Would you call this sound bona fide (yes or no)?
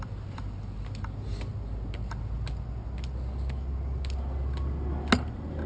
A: yes